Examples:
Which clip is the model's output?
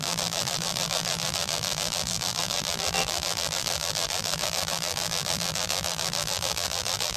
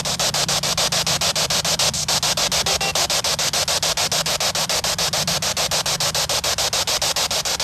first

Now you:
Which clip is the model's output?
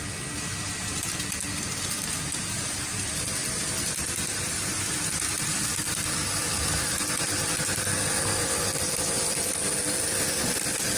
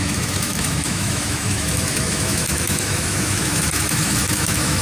second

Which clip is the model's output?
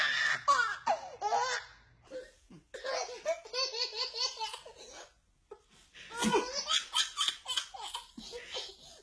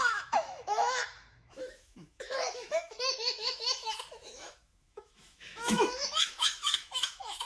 second